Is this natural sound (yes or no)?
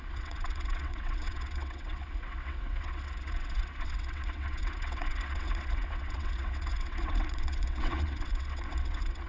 no